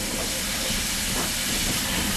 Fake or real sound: real